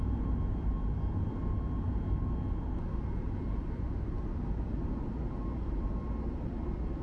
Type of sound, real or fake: real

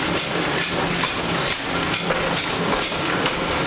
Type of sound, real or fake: real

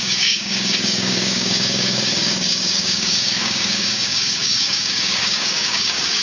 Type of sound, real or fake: fake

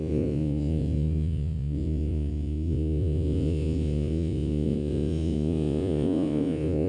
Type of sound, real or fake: fake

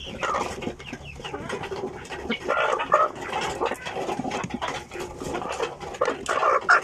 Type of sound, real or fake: real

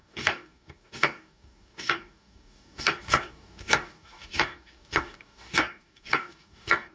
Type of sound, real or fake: fake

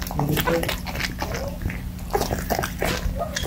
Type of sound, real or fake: real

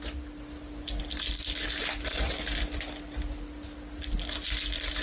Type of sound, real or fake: real